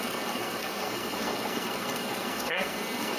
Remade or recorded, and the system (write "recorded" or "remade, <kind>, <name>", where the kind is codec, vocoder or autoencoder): remade, codec, SNAC